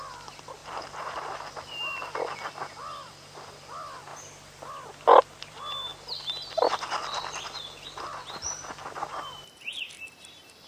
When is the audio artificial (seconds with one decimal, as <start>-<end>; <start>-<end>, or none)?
0.0-5.9; 6.5-10.7